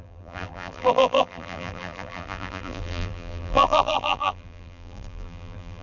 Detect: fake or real fake